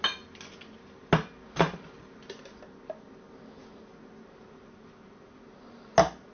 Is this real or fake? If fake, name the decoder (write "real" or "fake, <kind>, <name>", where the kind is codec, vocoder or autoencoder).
real